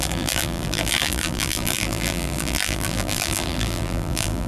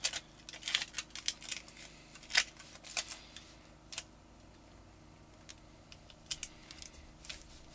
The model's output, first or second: first